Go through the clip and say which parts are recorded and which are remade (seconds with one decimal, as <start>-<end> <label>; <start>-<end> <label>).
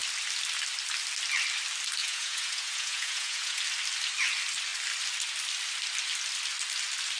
0.0-2.0 recorded; 2.0-3.6 remade; 3.6-7.2 recorded